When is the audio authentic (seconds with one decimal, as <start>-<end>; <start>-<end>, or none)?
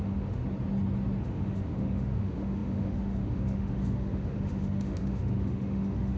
0.4-1.2